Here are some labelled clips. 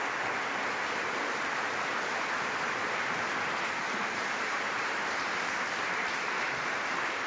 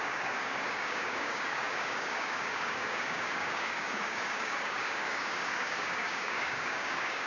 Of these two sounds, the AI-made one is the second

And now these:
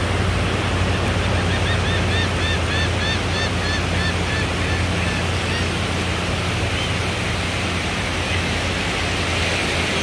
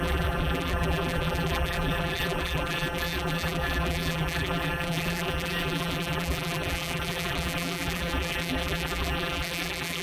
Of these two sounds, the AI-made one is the second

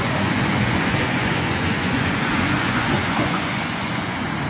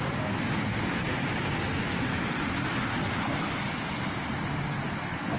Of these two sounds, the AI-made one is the first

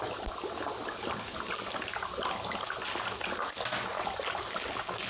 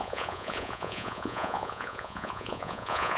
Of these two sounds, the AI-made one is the second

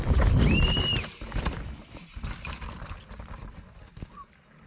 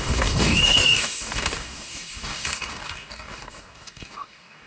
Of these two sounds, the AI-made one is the second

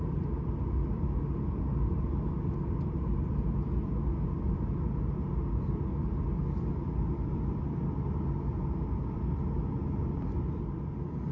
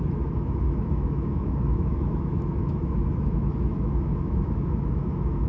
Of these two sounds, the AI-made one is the second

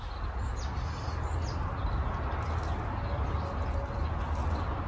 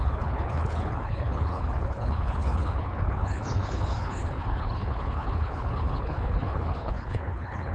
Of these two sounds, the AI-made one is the second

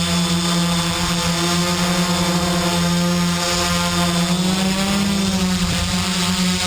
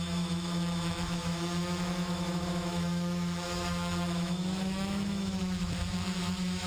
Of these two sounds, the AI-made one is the second